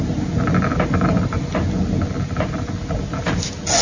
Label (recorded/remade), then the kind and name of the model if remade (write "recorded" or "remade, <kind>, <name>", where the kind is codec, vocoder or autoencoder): recorded